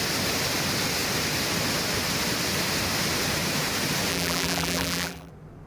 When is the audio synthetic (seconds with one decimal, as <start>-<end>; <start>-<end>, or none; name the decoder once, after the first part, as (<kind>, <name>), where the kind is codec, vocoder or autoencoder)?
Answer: 4.1-5.3 (vocoder, BigVGAN v2)